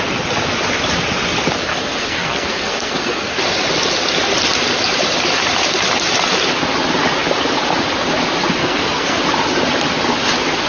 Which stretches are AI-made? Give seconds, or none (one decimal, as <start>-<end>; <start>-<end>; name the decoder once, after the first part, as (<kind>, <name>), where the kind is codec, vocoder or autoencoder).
1.7-3.4 (codec, SNAC); 8.6-9.2